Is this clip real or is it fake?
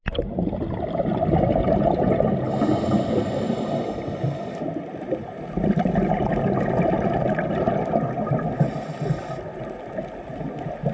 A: real